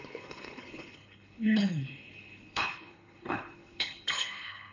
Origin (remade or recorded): remade